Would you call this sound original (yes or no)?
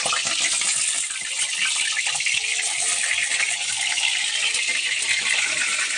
yes